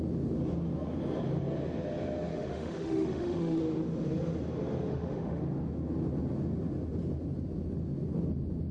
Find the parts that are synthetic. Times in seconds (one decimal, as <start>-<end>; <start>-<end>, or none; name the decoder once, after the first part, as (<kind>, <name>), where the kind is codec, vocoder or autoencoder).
2.3-3.6 (autoencoder, DAC-VAE); 4.9-5.4